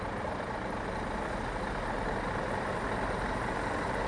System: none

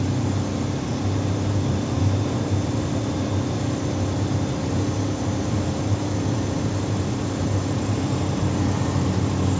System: none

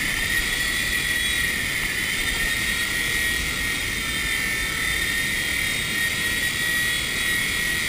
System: none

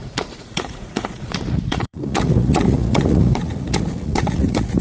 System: vocoder, Vocos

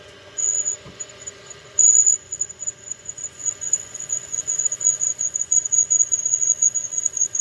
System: vocoder, Vocos